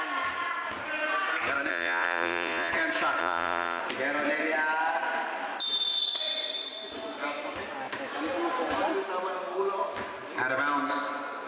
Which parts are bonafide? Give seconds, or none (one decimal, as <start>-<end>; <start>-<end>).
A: 0.0-1.7; 2.7-3.2; 3.8-11.5